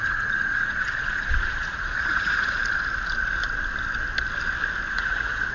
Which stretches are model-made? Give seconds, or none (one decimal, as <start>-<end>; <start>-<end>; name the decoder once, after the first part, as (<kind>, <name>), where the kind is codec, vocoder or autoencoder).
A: 0.0-2.6 (vocoder, Vocos); 4.9-5.5